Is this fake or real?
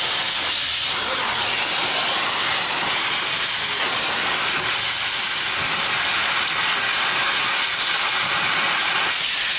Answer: real